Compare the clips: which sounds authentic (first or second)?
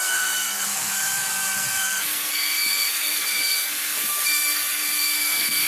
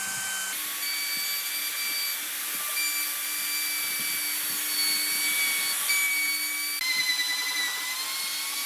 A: second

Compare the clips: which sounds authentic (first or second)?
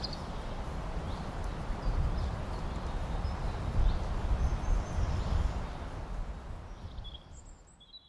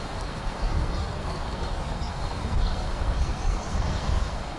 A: first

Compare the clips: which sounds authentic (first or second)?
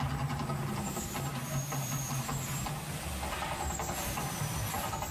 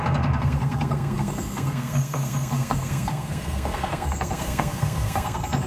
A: first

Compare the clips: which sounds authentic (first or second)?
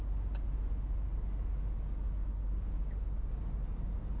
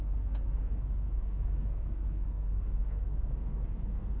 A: first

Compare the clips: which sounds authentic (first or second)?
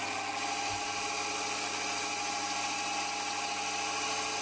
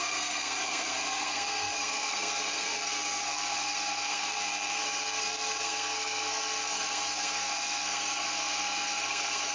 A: first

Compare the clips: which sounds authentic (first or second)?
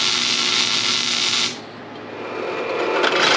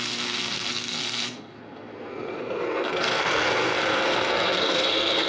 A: first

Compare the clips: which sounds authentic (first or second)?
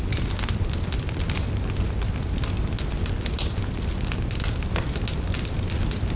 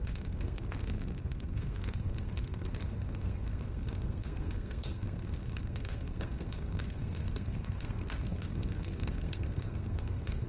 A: first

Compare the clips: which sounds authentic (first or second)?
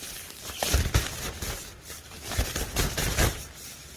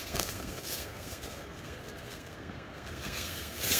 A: first